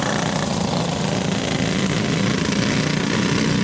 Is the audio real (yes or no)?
yes